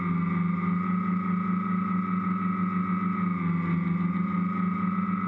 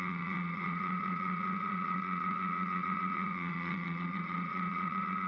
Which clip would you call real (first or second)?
first